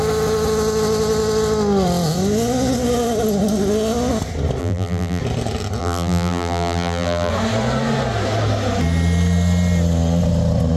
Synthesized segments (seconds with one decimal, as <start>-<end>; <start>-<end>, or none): 4.6-5.2; 5.8-7.3